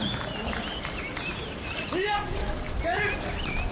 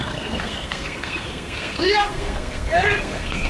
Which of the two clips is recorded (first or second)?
first